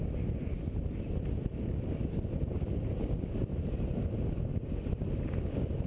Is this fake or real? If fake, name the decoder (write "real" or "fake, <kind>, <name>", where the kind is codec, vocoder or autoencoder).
real